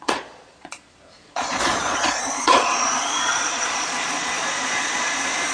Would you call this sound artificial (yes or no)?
yes